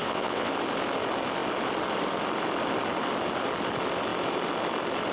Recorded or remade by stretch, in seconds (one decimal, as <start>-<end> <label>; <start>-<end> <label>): 0.0-0.5 remade; 0.5-5.1 recorded